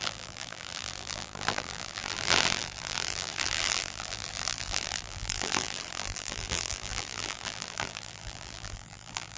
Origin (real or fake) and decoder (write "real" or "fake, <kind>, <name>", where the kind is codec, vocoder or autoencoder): fake, vocoder, BigVGAN v2